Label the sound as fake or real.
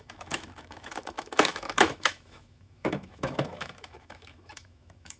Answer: fake